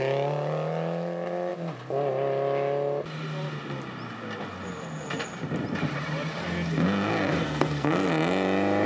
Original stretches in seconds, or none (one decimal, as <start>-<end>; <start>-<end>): 0.0-7.4; 8.1-8.9